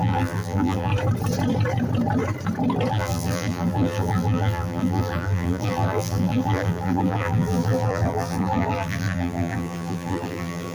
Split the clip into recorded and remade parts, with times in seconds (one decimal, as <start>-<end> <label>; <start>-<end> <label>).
0.0-0.9 remade; 0.9-2.9 recorded; 2.9-10.7 remade